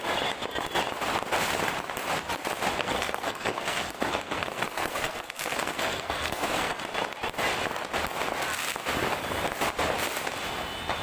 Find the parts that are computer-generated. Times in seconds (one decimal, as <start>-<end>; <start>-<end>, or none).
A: 2.8-6.8